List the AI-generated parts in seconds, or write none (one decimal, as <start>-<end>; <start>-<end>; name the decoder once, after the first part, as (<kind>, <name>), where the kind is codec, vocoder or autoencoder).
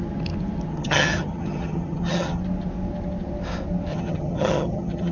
0.7-2.4 (vocoder, HiFi-GAN); 3.9-5.1